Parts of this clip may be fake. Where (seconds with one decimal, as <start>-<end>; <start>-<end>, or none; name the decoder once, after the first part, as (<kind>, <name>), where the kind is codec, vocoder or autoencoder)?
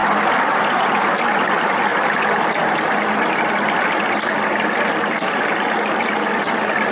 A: none